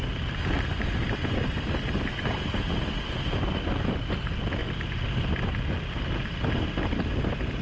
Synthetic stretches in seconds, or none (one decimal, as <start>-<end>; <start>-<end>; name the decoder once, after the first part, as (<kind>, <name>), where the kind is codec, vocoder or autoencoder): none